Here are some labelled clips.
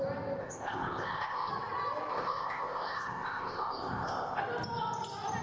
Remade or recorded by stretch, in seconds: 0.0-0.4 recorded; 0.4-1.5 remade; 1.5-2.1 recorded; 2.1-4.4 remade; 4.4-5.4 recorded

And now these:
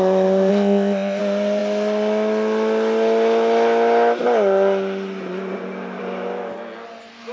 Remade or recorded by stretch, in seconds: 0.0-0.5 recorded; 0.5-1.2 remade; 1.2-7.3 recorded

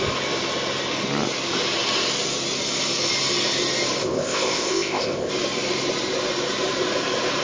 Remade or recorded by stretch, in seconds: 0.0-4.0 recorded; 4.0-5.3 remade; 5.3-7.4 recorded

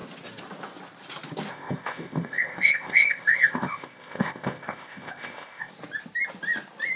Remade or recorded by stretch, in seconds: 0.0-1.5 recorded; 1.5-5.7 remade; 5.7-7.0 recorded

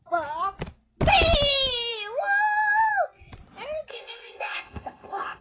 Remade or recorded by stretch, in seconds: 0.0-3.9 recorded; 3.9-5.4 remade

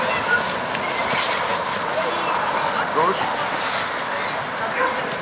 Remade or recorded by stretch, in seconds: 0.0-5.2 recorded

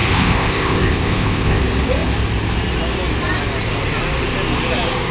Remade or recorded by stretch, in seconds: 0.0-1.6 remade; 1.6-5.1 recorded

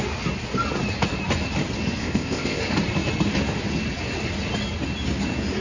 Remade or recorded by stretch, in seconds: 0.0-2.0 recorded; 2.0-2.6 remade; 2.6-5.6 recorded